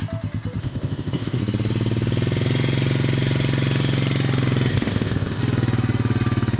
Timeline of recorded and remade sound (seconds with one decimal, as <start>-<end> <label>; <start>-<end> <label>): 0.0-0.6 recorded; 0.6-1.4 remade; 1.4-4.7 recorded; 4.7-5.4 remade; 5.4-6.6 recorded